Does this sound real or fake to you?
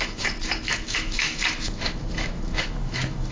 fake